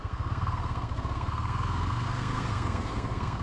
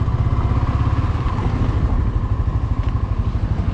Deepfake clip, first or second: first